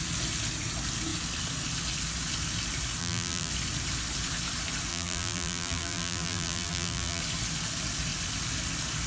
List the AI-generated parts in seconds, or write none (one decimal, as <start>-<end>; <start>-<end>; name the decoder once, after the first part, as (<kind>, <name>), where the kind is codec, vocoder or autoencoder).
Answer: 3.0-3.5 (vocoder, BigVGAN v2); 4.9-7.2